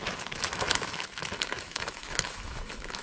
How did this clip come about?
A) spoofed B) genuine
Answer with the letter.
A